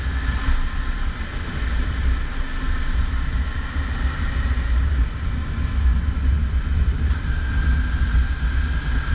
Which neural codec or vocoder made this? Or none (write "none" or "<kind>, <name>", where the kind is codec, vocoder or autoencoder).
none